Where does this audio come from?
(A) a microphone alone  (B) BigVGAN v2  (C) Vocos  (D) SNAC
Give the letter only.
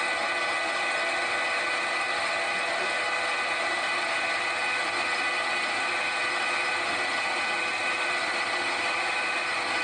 A